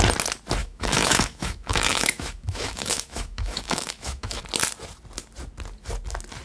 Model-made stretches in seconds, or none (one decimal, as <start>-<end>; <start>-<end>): 0.6-4.4